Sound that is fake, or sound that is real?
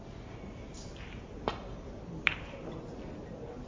real